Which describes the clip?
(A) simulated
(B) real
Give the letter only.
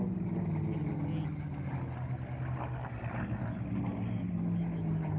B